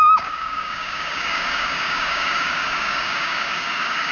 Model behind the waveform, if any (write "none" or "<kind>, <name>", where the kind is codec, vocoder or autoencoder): codec, DAC